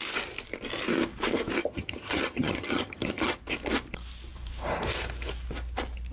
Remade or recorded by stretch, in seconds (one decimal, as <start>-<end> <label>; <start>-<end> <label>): 0.0-1.6 recorded; 1.6-3.4 remade; 3.4-6.1 recorded